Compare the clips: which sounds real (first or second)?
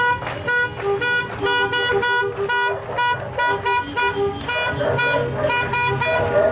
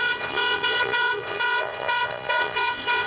first